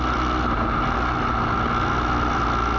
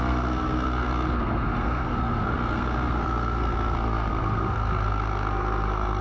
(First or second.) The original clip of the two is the first